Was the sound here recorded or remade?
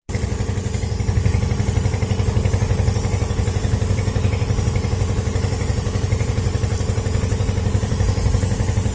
recorded